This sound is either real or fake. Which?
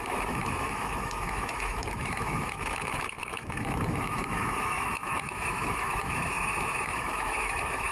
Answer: fake